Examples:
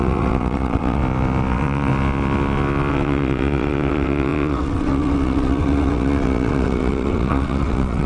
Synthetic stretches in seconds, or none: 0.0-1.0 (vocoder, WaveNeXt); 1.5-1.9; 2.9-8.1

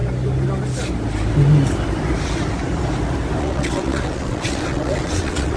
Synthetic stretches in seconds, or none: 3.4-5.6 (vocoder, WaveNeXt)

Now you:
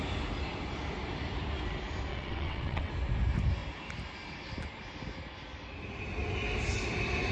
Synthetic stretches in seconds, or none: 2.1-2.9 (vocoder, WaveNeXt)

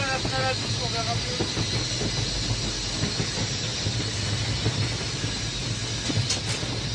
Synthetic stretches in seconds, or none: none

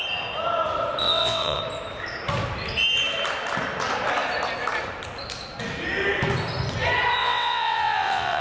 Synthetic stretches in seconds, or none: 1.0-1.6 (vocoder, WaveNeXt); 7.2-8.4

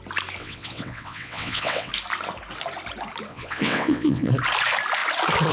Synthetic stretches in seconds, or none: 0.4-1.9 (vocoder, WaveNeXt); 3.3-4.3

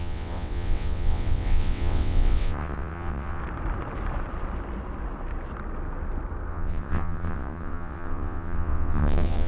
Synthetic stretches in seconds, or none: 0.0-3.4 (vocoder, WaveNeXt); 6.5-9.5

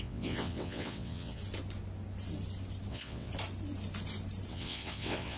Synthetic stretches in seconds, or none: 0.0-1.4 (vocoder, WaveNeXt); 2.9-3.3; 4.5-5.4